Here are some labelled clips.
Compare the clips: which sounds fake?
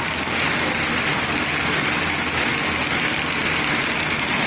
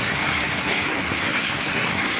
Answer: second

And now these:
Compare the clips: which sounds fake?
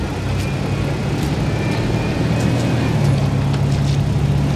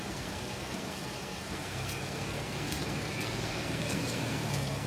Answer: second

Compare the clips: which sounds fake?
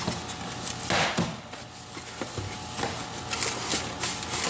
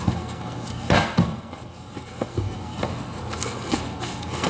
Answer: second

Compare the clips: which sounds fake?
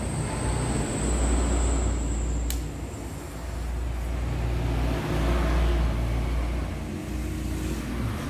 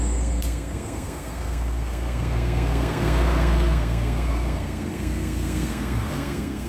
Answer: second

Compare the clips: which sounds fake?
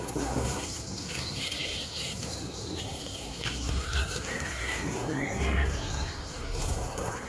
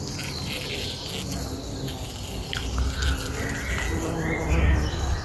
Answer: first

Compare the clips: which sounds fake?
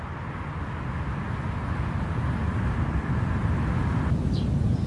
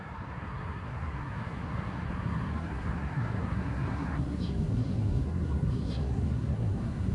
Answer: second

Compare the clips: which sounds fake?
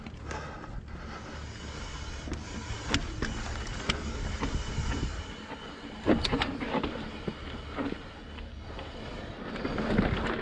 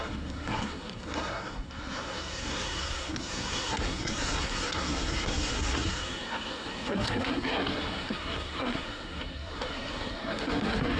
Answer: second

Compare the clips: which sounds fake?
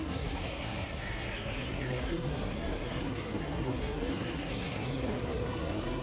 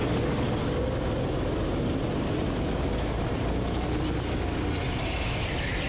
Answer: first